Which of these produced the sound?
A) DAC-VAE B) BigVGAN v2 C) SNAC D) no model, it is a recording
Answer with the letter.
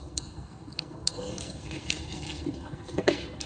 C